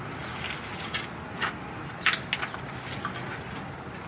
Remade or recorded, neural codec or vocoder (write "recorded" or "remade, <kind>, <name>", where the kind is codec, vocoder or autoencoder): recorded